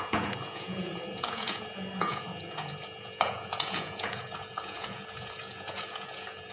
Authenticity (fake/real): fake